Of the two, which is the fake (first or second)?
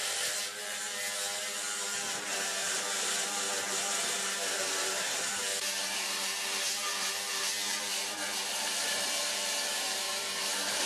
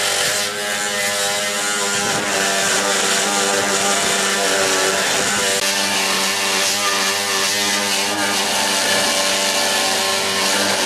first